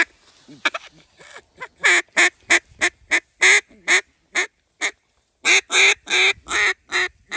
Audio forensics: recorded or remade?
recorded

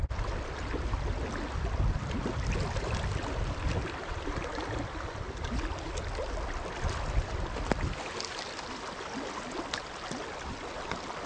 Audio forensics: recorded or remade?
recorded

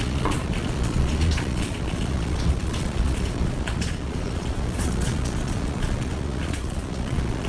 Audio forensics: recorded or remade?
remade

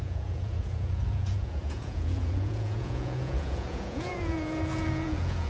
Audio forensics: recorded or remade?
remade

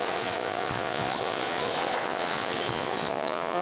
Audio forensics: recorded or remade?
remade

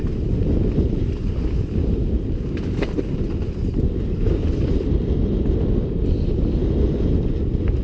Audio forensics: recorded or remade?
recorded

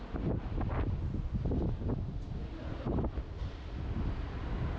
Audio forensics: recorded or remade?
recorded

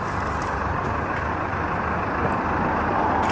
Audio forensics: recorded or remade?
recorded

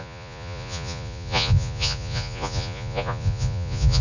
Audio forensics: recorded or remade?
remade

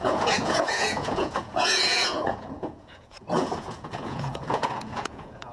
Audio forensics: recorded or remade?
remade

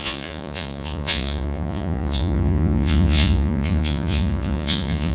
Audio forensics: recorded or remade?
remade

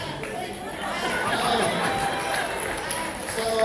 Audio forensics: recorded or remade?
recorded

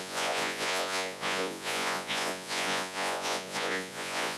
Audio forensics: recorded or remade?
remade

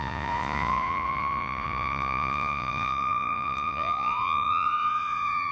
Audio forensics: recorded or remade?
remade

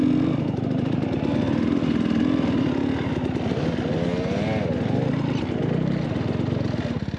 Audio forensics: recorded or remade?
recorded